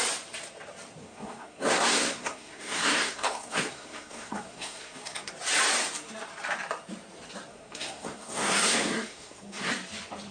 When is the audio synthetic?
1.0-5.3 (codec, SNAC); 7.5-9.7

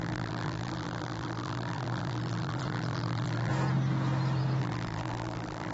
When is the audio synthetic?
0.0-3.5 (vocoder, BigVGAN v2); 4.6-5.7

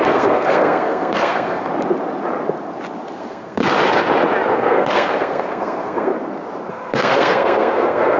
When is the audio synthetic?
0.0-1.7 (codec, SNAC); 3.2-3.6; 4.5-6.1; 6.7-8.2

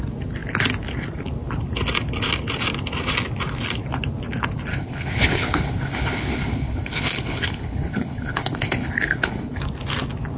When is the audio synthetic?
4.7-9.6 (codec, HILCodec)

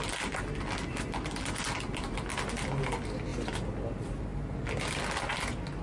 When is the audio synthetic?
none

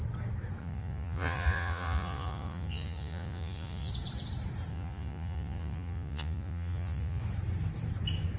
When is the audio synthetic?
0.6-3.9 (vocoder, Vocos); 4.7-7.2